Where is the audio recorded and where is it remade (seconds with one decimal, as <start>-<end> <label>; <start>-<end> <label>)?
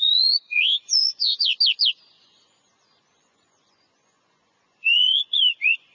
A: 0.0-1.5 remade; 1.5-2.1 recorded; 2.1-5.9 remade